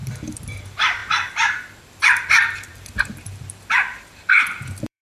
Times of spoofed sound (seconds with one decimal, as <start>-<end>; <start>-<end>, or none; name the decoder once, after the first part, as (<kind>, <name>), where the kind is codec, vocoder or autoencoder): 0.0-5.0 (vocoder, BigVGAN v2)

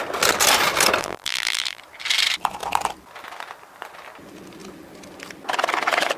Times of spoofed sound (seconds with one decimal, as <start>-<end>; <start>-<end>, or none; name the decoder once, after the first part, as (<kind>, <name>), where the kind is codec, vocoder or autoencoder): 1.0-1.8 (vocoder, BigVGAN v2)

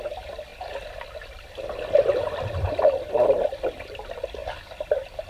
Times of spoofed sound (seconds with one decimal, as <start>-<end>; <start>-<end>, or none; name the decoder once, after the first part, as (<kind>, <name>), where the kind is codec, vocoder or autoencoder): 0.0-0.5 (vocoder, BigVGAN v2); 3.7-5.3

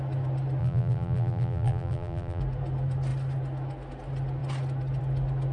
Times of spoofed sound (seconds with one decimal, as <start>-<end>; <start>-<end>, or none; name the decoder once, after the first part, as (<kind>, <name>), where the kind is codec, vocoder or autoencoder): 0.6-2.4 (vocoder, BigVGAN v2)

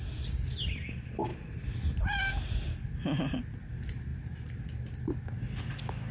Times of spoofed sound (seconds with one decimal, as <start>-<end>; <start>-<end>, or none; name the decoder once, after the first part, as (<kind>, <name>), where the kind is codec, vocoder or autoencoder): 1.3-2.3 (vocoder, BigVGAN v2); 4.1-4.6

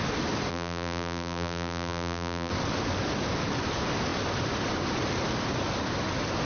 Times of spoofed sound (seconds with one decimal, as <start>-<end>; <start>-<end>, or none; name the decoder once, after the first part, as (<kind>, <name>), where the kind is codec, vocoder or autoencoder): 0.5-2.5 (vocoder, BigVGAN v2)